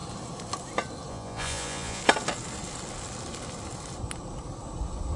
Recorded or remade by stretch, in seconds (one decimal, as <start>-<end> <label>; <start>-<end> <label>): 0.0-1.1 recorded; 1.1-2.0 remade; 2.0-5.2 recorded